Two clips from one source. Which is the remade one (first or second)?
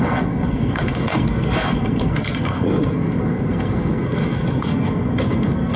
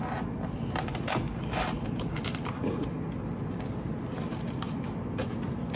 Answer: first